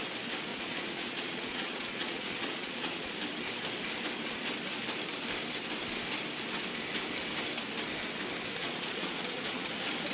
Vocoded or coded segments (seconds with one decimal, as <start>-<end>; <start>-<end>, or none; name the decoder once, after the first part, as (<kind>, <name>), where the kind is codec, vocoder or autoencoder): 0.5-3.1 (vocoder, Vocos); 8.6-9.7